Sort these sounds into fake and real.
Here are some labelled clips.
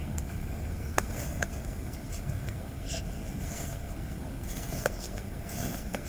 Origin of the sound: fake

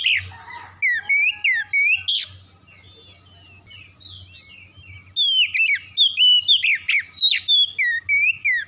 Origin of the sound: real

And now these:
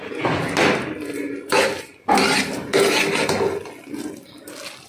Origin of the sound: real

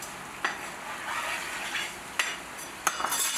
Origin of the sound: real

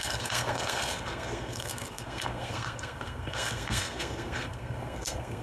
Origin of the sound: fake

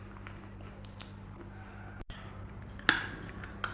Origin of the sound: real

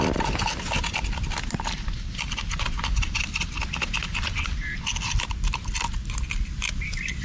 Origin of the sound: real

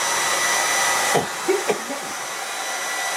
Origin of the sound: real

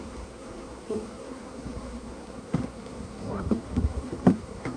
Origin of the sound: fake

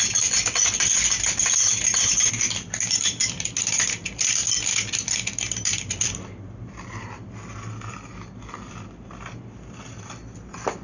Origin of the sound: real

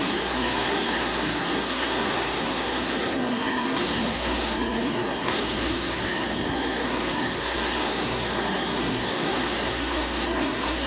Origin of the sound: fake